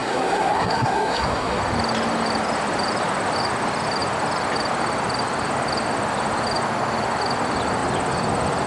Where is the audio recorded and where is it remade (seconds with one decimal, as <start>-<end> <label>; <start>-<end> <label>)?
0.0-1.6 remade; 1.6-8.7 recorded